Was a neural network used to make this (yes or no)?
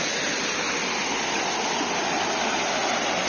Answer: no